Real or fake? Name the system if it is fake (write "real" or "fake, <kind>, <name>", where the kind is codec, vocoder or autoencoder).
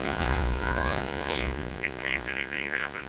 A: fake, vocoder, Vocos